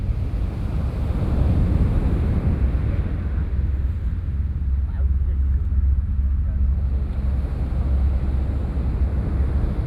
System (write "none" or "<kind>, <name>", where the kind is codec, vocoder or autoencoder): none